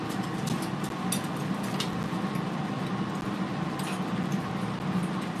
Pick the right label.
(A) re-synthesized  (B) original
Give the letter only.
B